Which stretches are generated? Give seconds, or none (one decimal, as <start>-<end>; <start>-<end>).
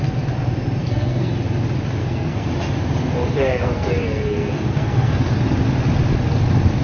0.8-1.3; 2.0-2.5; 3.3-5.3